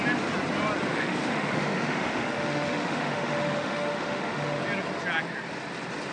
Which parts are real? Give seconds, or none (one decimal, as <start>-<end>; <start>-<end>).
0.0-0.9; 4.6-6.1